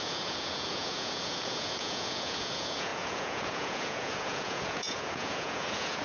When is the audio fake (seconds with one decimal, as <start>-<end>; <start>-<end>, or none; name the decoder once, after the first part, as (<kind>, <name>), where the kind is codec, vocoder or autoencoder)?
0.0-6.0 (vocoder, Vocos)